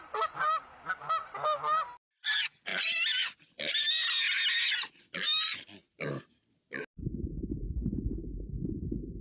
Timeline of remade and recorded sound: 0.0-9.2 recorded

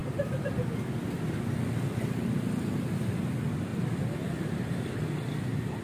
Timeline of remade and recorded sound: 0.0-0.5 remade; 0.5-5.8 recorded

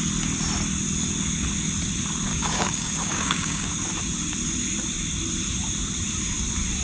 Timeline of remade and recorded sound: 0.0-2.3 recorded; 2.3-3.7 remade; 3.7-6.8 recorded

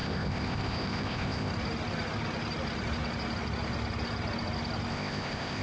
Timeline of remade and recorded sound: 0.0-1.5 remade; 1.5-4.9 recorded; 4.9-5.6 remade

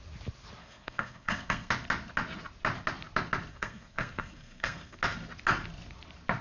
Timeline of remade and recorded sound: 0.0-0.6 recorded; 0.6-1.7 remade; 1.7-3.5 recorded; 3.5-5.0 remade; 5.0-6.4 recorded

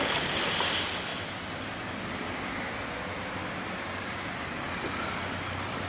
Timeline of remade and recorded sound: 0.0-5.9 recorded

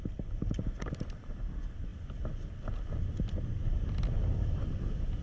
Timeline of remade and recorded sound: 0.0-5.2 recorded

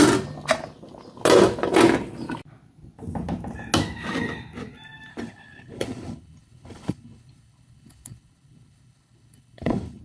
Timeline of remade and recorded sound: 0.0-5.1 recorded; 5.1-10.0 remade